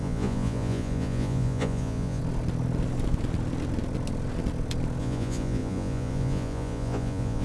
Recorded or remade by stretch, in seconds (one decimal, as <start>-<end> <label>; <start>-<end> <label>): 0.0-2.2 remade; 2.2-5.0 recorded; 5.0-7.4 remade